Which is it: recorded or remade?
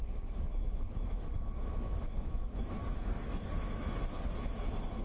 remade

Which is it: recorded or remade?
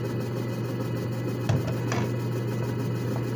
recorded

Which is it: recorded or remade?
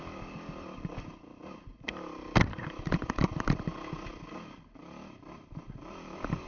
recorded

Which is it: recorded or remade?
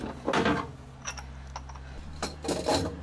recorded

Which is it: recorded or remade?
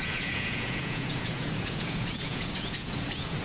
remade